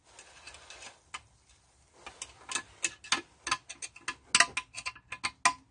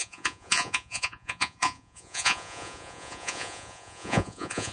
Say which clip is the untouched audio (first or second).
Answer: first